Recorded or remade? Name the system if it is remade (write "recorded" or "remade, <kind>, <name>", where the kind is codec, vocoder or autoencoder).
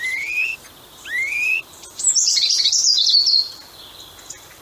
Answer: remade, vocoder, BigVGAN v2